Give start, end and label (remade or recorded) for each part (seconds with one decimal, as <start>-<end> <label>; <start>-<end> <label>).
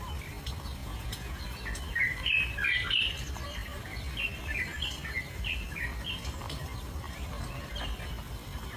0.0-0.8 recorded; 0.8-1.4 remade; 1.4-8.8 recorded